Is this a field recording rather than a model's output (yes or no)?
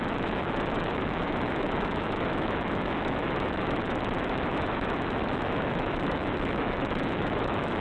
no